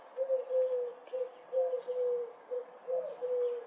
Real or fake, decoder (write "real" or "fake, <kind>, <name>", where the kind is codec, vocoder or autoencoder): real